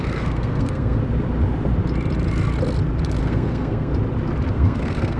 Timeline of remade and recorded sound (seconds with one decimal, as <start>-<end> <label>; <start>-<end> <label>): 0.0-1.0 remade; 1.0-3.2 recorded; 3.2-3.9 remade; 3.9-4.5 recorded; 4.5-5.2 remade